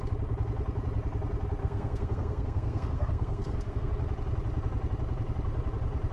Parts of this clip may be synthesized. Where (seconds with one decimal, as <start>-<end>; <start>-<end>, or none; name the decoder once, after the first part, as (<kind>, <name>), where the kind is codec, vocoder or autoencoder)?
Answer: 1.6-3.9 (codec, SNAC)

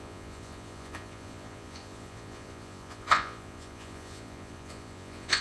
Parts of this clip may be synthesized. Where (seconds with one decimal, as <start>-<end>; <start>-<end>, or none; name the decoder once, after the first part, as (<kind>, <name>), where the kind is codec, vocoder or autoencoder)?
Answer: 0.0-5.4 (vocoder, Vocos)

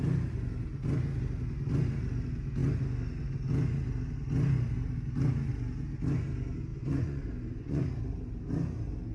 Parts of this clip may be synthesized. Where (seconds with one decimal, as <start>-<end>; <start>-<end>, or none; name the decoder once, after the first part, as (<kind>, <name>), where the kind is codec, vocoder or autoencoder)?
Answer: 6.7-7.9 (vocoder, Vocos)

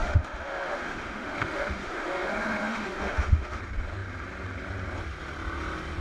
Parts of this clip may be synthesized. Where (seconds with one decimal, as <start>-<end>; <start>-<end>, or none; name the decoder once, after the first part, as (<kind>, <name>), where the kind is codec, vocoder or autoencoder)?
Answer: 0.0-3.6 (autoencoder, DAC-VAE)

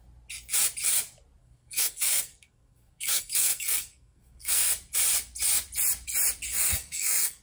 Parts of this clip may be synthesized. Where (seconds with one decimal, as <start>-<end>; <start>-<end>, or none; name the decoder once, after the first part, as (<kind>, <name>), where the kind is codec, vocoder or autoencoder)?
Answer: 1.4-4.7 (codec, SNAC); 6.5-7.4

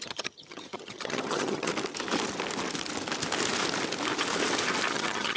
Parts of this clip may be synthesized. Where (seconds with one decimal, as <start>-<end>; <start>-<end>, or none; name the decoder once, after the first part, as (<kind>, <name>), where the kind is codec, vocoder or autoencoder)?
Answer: 0.0-1.7 (vocoder, HiFi-GAN); 4.9-5.4